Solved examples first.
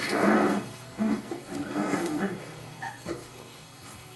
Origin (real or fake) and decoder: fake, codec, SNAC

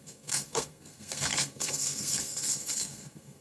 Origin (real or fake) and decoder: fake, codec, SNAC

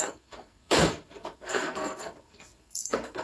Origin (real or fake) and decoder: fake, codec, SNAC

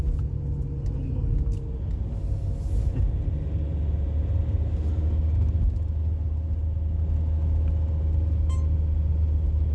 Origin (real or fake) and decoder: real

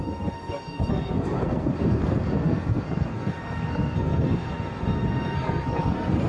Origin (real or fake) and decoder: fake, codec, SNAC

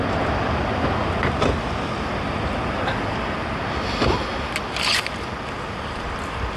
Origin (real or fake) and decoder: real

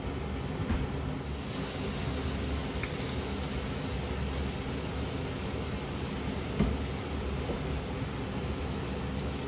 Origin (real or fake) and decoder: real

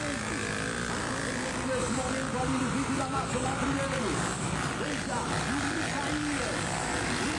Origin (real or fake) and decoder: real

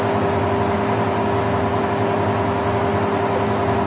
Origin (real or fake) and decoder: real